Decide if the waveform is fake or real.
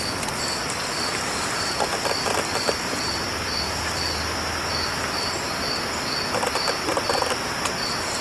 real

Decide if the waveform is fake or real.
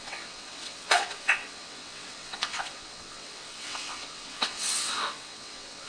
fake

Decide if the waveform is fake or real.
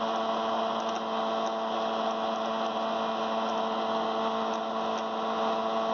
real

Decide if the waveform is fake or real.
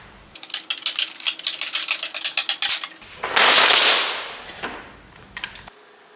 real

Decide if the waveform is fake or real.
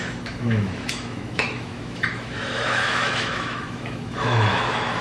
fake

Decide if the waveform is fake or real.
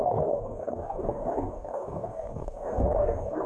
fake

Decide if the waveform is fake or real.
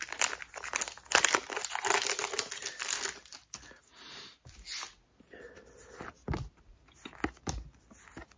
real